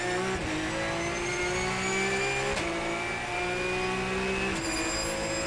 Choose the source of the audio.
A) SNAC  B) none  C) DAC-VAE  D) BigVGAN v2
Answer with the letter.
B